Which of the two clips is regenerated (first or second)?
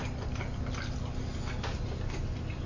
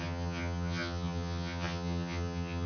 second